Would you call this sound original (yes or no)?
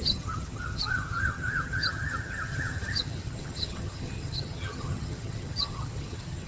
no